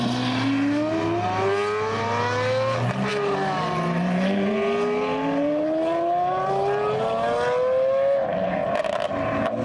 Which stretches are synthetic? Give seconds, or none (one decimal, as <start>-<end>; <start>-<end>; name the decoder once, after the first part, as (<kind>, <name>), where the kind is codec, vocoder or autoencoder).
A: none